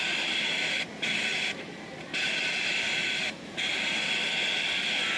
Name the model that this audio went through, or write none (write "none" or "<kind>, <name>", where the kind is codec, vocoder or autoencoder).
none